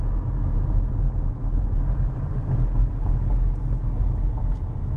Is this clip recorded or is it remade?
recorded